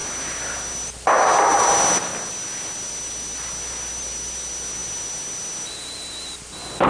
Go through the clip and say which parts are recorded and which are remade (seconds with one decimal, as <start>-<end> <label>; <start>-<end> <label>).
0.0-6.9 recorded